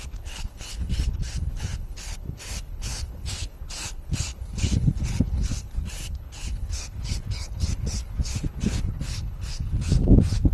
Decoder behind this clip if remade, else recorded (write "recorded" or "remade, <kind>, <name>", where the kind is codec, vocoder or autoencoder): remade, codec, HILCodec